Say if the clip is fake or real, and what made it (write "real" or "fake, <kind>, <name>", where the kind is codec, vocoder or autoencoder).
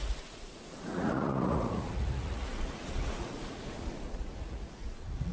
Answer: fake, vocoder, Vocos